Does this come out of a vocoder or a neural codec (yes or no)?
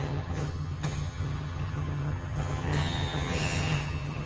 yes